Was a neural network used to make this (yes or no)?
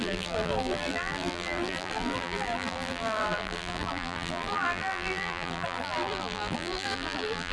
yes